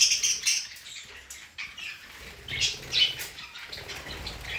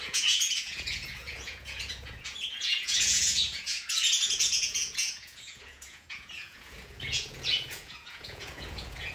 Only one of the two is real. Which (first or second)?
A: first